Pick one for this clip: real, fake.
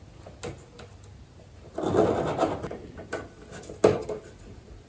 real